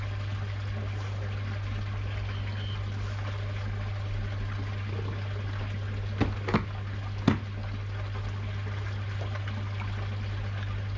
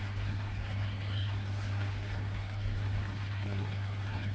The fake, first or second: second